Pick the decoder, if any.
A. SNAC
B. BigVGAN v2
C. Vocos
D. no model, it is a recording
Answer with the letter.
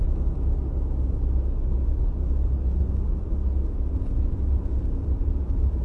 D